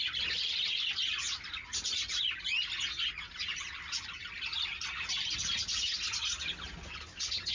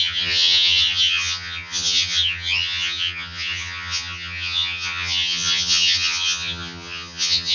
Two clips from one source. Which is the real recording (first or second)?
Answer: first